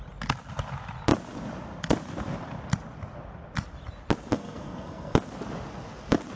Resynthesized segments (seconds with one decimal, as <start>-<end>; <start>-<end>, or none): 4.3-5.2